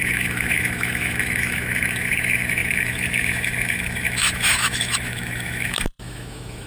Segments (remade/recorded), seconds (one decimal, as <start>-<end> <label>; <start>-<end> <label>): 0.0-6.7 remade